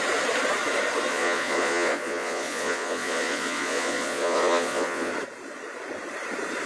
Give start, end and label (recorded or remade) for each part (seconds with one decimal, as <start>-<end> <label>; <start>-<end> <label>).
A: 0.0-1.1 recorded; 1.1-5.1 remade; 5.1-6.7 recorded